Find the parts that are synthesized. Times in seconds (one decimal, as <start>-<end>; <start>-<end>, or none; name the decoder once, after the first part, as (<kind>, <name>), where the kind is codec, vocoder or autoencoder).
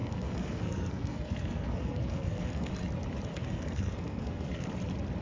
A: 0.0-2.7 (codec, SNAC); 3.3-4.7